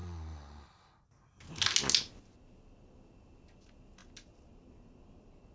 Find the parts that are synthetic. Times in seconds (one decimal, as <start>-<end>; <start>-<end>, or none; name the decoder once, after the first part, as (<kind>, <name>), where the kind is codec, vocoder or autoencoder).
none